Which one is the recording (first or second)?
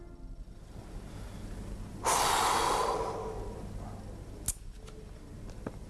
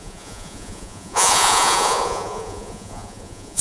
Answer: first